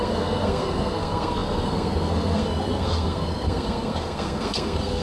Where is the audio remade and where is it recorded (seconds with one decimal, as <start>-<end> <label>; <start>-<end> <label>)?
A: 0.0-5.0 remade